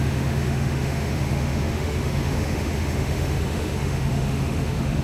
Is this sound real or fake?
fake